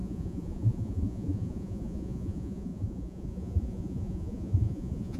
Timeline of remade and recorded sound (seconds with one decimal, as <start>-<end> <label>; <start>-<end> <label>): 0.0-5.2 remade